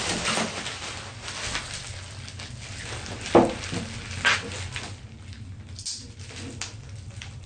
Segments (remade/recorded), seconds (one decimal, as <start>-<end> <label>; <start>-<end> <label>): 0.0-7.5 recorded